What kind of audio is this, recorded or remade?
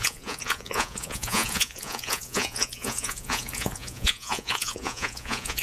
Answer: remade